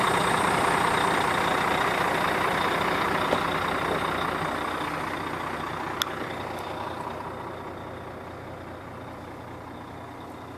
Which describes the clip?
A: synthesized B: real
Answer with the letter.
B